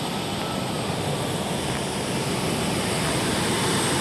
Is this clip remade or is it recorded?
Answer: remade